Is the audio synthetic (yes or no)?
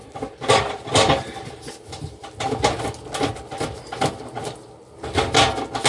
no